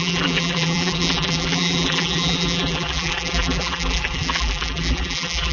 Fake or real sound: fake